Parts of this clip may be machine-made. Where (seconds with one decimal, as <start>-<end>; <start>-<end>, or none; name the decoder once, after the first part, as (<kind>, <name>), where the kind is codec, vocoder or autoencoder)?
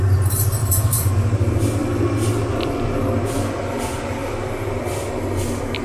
0.6-1.1 (vocoder, BigVGAN v2); 4.2-4.8